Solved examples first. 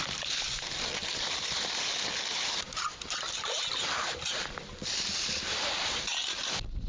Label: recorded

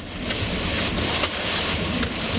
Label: recorded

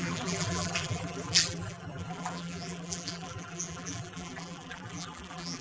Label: remade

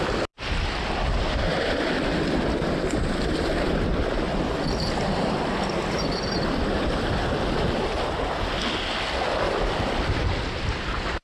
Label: recorded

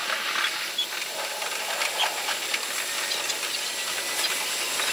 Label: recorded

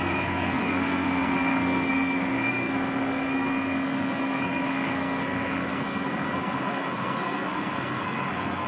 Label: remade